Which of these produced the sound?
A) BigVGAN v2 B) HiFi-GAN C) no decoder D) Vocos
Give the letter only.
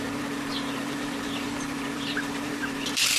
A